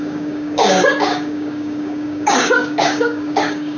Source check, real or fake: fake